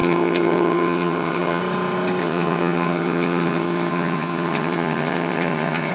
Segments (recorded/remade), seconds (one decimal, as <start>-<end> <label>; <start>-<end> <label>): 0.0-1.6 remade; 1.6-2.2 recorded; 2.2-5.9 remade

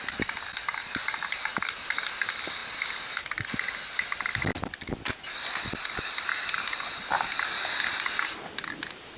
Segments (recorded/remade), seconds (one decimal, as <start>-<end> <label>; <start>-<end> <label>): 0.0-9.2 recorded

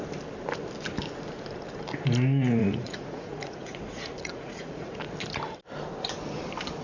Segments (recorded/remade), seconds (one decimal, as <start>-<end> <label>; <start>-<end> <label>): 0.0-2.6 recorded; 2.6-5.0 remade; 5.0-6.8 recorded

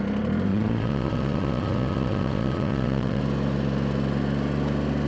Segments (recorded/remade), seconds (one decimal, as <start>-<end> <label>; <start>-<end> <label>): 0.0-0.5 recorded; 0.5-3.2 remade; 3.2-5.1 recorded